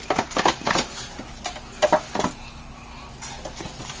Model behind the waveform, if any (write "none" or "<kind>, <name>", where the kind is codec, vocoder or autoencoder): none